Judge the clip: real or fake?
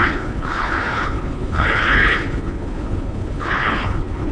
fake